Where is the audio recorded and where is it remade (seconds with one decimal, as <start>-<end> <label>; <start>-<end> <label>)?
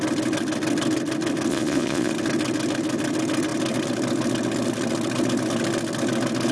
0.0-1.5 recorded; 1.5-2.1 remade; 2.1-6.5 recorded